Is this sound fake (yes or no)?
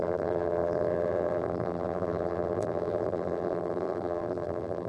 yes